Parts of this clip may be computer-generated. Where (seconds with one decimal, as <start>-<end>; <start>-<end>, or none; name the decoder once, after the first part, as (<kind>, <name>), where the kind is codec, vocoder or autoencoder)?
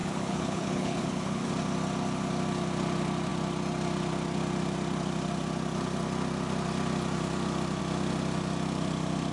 0.0-1.5 (codec, HILCodec)